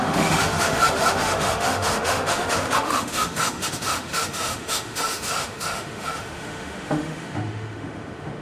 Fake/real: fake